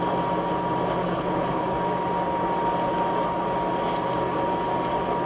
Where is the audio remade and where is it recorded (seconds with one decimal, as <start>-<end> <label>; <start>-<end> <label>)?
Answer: 0.0-1.0 recorded; 1.0-1.7 remade; 1.7-5.3 recorded